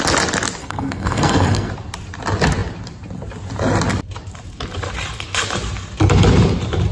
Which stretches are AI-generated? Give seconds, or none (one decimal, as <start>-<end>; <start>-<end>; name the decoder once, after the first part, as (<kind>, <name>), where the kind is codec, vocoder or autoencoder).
0.6-1.7 (codec, SNAC)